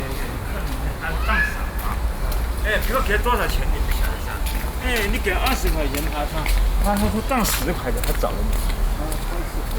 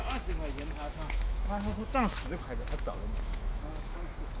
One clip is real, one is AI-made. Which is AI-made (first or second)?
second